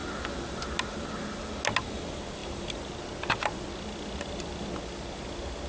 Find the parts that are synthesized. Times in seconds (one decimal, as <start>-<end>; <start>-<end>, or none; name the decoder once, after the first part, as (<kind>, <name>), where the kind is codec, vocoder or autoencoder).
none